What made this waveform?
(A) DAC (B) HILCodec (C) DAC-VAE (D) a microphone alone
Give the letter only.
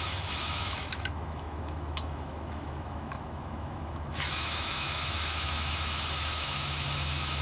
C